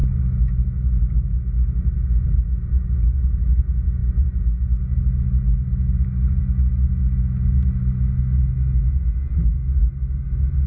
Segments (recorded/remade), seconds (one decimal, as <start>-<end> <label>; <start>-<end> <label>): 0.0-3.0 recorded; 3.0-3.6 remade; 3.6-10.7 recorded